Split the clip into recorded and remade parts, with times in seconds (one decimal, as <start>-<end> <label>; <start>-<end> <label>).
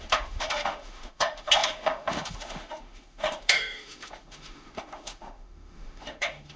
0.0-6.6 remade